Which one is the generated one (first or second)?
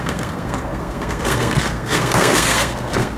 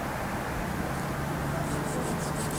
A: first